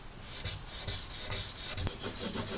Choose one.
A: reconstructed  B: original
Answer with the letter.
B